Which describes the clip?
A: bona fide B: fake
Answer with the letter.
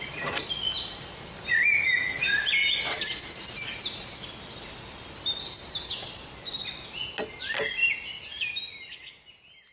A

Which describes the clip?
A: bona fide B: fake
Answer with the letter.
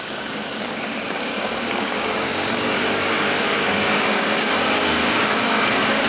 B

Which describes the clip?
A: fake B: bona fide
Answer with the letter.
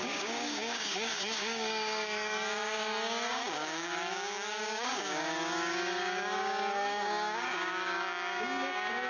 A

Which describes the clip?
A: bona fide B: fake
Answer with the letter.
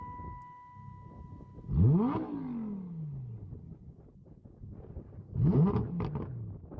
A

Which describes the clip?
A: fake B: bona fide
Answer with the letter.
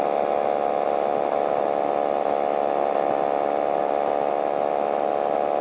B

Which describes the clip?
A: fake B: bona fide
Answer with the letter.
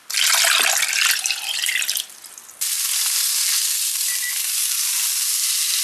B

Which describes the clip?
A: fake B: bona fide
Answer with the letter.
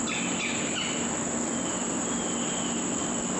B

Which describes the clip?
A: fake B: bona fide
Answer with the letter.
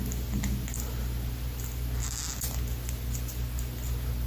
B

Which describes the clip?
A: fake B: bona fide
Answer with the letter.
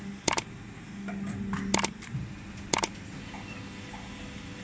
B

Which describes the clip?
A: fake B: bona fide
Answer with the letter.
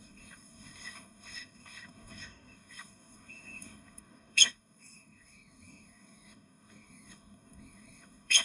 A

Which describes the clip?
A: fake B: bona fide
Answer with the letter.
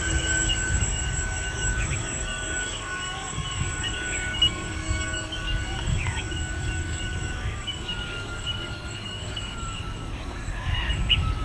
A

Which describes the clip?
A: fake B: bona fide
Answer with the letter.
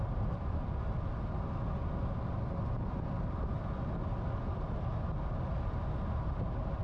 B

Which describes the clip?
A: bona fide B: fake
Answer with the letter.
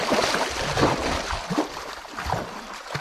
A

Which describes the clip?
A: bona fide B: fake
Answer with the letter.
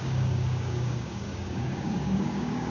B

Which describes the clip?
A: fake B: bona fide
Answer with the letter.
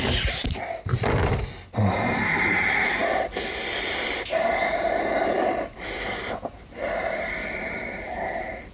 B